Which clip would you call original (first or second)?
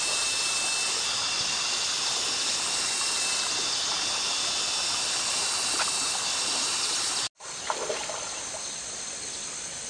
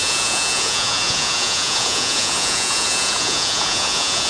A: first